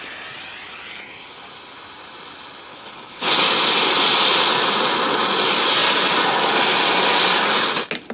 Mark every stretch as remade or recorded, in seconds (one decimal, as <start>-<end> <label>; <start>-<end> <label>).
0.0-2.7 recorded; 2.7-3.4 remade; 3.4-8.1 recorded